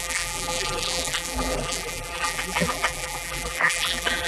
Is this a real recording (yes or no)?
no